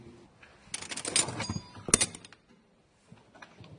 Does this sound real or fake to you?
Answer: real